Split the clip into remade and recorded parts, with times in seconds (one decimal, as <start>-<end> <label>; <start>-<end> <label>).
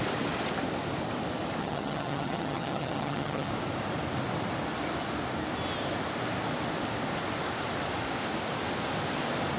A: 0.0-1.6 recorded; 1.6-3.5 remade; 3.5-9.6 recorded